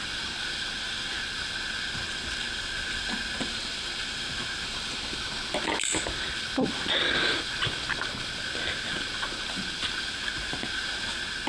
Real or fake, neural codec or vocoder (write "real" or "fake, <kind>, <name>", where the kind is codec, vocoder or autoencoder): real